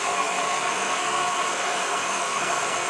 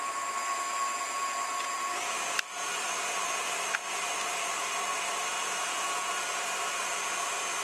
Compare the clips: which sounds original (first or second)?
second